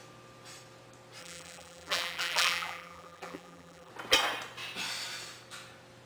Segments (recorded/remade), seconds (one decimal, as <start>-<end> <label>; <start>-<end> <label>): 0.0-1.2 recorded; 1.2-3.9 remade; 3.9-6.1 recorded